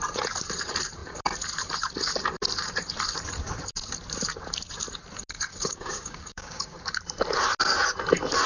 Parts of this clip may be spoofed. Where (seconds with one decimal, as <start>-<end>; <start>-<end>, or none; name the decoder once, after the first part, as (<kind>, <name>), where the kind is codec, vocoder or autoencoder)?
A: 5.5-6.8 (codec, DAC)